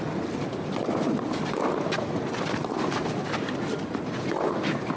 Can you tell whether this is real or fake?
real